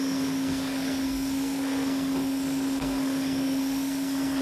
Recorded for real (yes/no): no